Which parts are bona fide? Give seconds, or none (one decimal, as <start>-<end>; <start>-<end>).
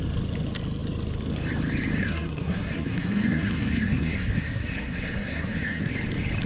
0.0-2.0; 5.9-6.5